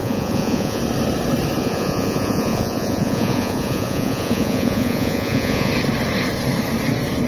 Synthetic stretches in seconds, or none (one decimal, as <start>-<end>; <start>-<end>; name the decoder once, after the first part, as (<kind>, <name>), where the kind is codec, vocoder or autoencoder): 0.0-0.8 (vocoder, Vocos); 1.6-5.7